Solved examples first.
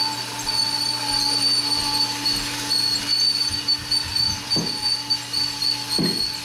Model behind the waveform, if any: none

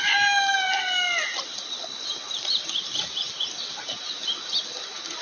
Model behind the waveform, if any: none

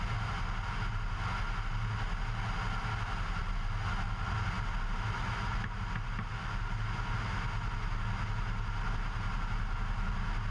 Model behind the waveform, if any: none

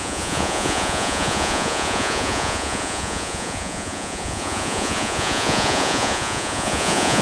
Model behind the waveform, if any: vocoder, Vocos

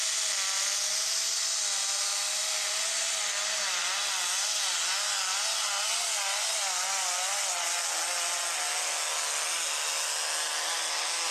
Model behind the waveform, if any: none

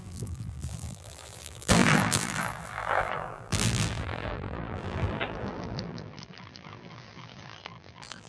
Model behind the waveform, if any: vocoder, BigVGAN v2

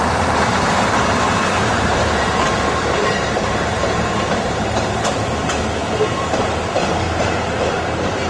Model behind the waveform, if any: vocoder, BigVGAN v2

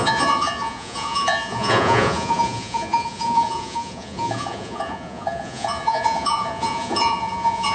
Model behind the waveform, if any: vocoder, Vocos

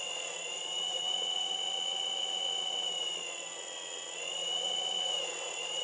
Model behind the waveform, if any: vocoder, WaveNeXt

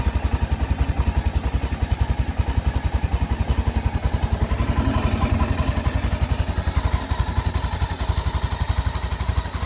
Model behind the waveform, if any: none